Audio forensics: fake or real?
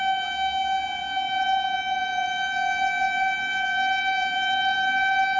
real